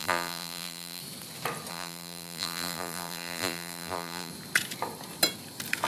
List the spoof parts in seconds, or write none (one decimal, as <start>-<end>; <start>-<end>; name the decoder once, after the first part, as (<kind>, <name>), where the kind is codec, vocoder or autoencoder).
0.0-1.0 (vocoder, BigVGAN v2); 1.7-4.3